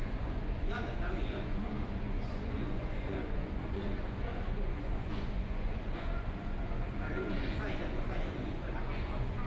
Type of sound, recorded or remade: remade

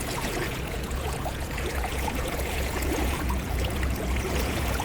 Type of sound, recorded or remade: remade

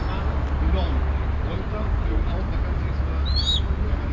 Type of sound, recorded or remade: recorded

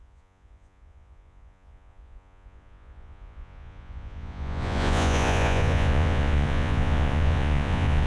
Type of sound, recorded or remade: remade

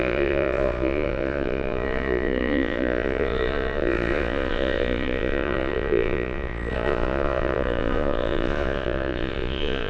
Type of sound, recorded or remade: remade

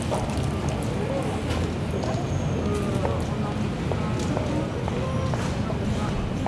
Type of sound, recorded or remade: recorded